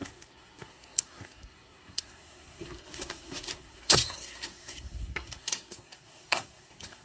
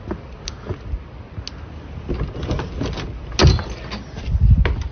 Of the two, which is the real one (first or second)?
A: second